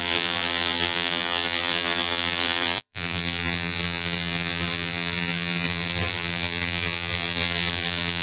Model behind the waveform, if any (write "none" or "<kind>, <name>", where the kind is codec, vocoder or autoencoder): vocoder, BigVGAN v2